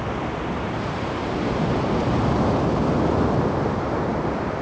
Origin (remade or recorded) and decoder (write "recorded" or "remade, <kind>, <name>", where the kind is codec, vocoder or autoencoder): recorded